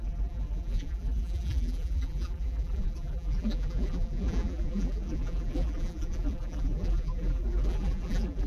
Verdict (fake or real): fake